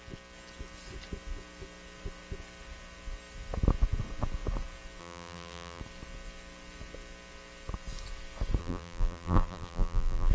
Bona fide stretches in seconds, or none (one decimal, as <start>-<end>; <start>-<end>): 0.0-5.0; 5.8-8.6